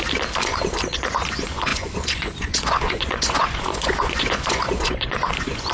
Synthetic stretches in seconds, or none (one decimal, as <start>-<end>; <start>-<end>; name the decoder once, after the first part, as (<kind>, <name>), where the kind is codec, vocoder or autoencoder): 0.9-5.7 (vocoder, Vocos)